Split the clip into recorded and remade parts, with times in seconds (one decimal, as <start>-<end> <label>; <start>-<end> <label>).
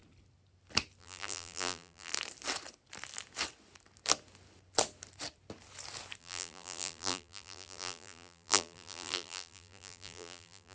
0.0-1.0 recorded; 1.0-2.1 remade; 2.1-6.2 recorded; 6.2-10.7 remade